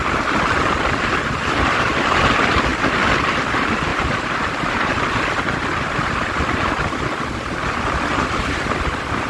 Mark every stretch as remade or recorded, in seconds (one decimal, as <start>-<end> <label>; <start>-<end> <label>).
0.0-3.9 recorded; 3.9-4.9 remade; 4.9-9.3 recorded